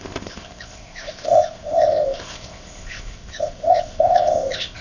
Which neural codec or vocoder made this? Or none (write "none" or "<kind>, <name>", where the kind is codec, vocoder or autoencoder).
codec, ZipCodec